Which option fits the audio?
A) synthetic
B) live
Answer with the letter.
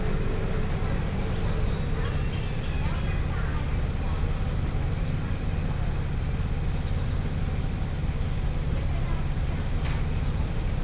B